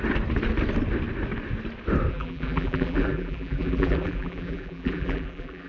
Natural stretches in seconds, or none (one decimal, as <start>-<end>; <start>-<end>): 0.0-2.1

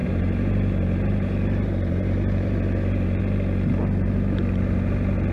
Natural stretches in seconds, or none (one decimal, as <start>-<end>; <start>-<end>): 3.2-5.3

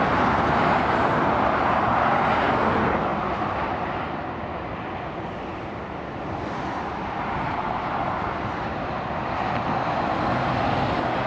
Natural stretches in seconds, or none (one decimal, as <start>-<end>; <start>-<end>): 0.0-3.1; 4.0-5.5; 6.9-11.3

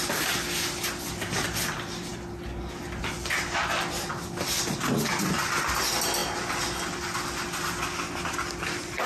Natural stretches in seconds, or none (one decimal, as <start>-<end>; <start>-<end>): 0.0-9.1

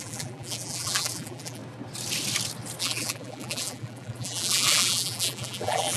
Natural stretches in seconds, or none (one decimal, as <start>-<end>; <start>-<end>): 1.6-2.8

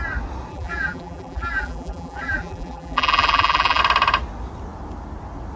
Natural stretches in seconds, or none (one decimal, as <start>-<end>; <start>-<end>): 0.0-0.5; 3.8-5.6

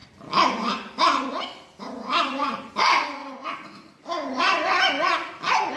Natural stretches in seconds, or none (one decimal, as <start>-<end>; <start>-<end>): 3.2-4.4

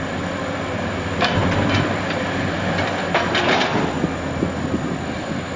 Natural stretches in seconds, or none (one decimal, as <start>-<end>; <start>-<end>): 0.0-5.6